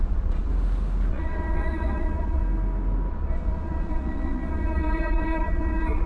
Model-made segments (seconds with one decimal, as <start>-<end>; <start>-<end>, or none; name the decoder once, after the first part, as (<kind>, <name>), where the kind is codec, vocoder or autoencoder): 0.0-0.5 (vocoder, Vocos); 1.1-2.4; 3.1-6.1